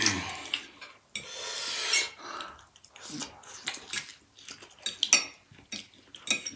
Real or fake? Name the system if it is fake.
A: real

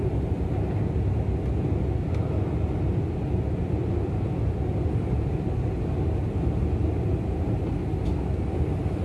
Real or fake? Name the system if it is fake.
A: real